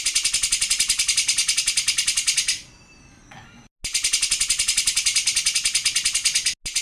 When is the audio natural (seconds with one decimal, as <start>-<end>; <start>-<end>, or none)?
0.0-6.8